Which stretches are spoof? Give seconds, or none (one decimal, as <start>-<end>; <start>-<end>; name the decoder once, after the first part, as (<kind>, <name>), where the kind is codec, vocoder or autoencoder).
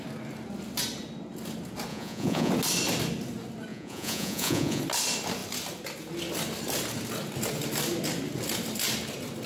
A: 1.9-2.5 (vocoder, Vocos); 3.7-4.8